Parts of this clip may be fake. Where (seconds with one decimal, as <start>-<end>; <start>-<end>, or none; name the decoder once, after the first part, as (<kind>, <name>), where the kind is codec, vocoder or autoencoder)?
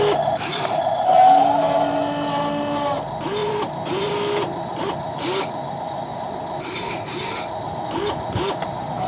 3.4-4.1 (vocoder, BigVGAN v2)